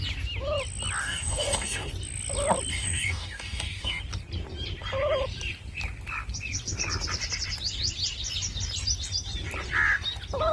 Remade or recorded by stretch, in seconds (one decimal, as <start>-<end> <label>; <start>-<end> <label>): 0.0-1.0 recorded; 1.0-1.9 remade; 1.9-2.7 recorded; 2.7-4.0 remade; 4.0-10.5 recorded